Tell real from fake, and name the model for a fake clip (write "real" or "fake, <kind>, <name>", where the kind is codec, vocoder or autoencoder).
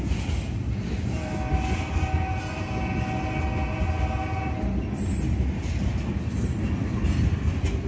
real